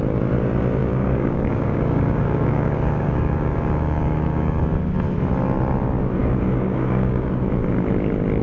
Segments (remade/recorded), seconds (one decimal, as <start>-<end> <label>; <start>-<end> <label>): 0.0-0.8 recorded; 0.8-4.6 remade; 4.6-6.2 recorded; 6.2-7.3 remade; 7.3-8.4 recorded